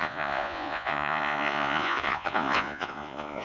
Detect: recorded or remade remade